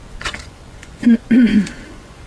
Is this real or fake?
fake